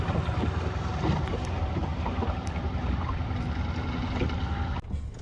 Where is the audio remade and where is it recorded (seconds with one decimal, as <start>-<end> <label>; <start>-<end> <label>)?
0.0-5.2 recorded